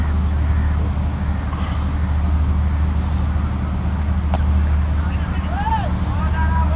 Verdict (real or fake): real